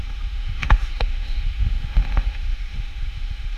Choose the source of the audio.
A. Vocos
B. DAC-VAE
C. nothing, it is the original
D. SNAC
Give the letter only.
B